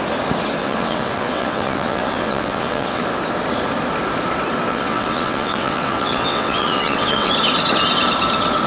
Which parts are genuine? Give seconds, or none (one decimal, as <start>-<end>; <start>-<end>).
0.0-0.6; 3.0-4.7; 7.3-8.7